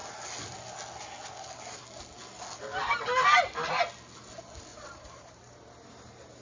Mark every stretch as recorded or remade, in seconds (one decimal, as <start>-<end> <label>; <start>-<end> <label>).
0.0-4.7 recorded; 4.7-6.4 remade